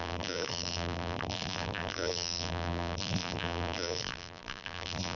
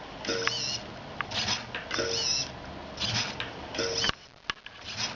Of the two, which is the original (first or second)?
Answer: second